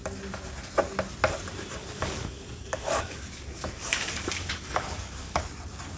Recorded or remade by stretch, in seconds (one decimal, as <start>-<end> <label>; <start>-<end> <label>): 0.0-1.8 recorded; 1.8-5.4 remade; 5.4-6.0 recorded